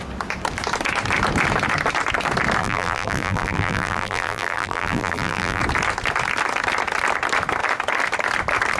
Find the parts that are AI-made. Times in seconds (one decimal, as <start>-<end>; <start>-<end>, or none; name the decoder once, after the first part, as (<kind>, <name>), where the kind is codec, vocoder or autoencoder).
2.6-5.6 (vocoder, BigVGAN v2)